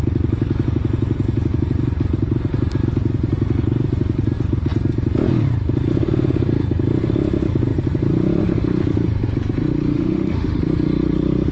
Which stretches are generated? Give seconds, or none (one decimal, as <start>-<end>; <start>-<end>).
9.9-10.6